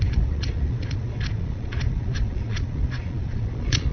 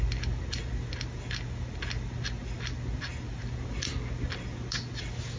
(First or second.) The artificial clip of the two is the first